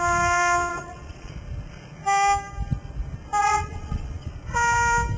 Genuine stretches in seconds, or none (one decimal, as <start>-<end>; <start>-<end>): 0.0-0.7; 1.3-3.4; 4.3-5.2